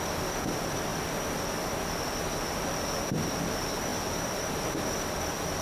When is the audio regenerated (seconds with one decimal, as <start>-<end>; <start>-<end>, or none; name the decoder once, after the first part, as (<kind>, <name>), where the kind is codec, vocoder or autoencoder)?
none